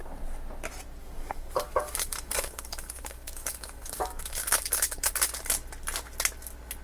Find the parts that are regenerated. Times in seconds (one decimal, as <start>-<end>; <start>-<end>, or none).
1.0-5.1